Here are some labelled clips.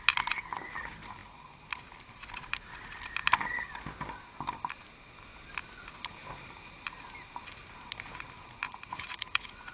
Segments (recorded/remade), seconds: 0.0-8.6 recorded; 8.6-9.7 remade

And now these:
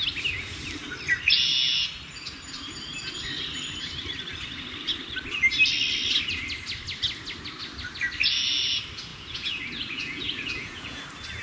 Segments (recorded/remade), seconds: 0.0-9.1 recorded; 9.1-11.0 remade; 11.0-11.4 recorded

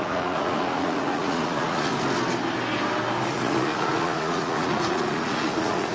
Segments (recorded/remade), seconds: 0.0-1.9 remade; 1.9-3.3 recorded; 3.3-5.9 remade

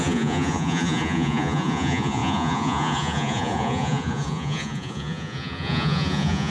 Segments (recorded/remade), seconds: 0.0-6.5 remade

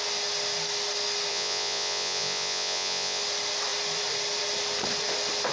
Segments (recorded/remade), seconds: 0.0-1.3 recorded; 1.3-3.2 remade; 3.2-5.5 recorded

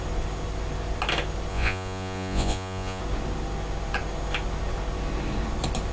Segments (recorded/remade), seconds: 0.0-1.5 recorded; 1.5-3.0 remade; 3.0-5.9 recorded